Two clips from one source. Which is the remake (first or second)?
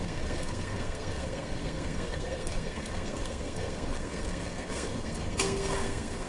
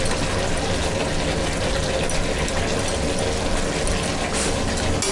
first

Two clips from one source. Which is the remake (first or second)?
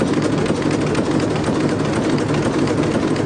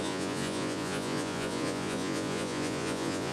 second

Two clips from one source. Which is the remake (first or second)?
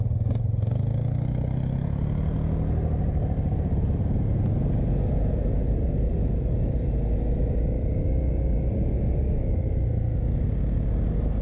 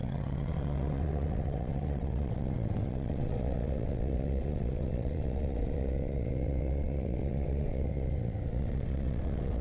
second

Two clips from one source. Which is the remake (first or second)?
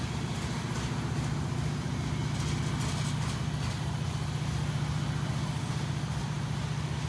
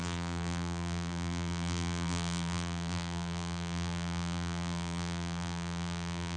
second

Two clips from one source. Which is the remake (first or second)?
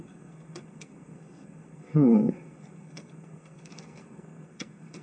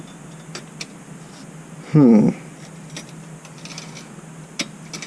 first